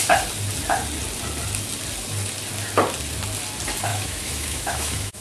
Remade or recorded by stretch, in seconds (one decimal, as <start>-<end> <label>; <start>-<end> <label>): 0.0-3.9 recorded; 3.9-5.2 remade